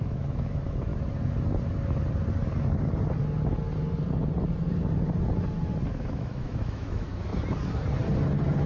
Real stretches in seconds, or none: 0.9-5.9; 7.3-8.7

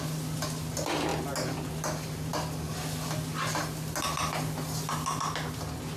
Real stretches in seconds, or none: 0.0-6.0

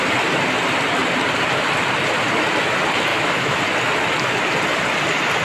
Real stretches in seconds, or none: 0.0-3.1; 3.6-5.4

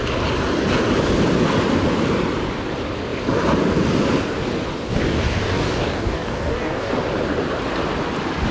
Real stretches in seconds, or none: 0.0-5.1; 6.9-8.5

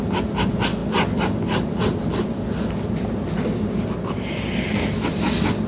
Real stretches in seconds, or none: 0.0-5.7